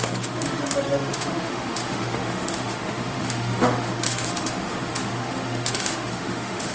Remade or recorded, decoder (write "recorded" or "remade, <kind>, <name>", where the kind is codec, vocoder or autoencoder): remade, autoencoder, DAC-VAE